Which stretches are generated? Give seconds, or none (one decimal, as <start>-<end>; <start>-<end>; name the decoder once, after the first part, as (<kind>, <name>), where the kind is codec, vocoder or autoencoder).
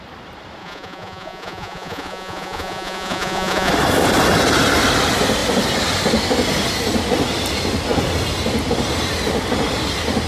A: 0.6-3.7 (vocoder, Vocos)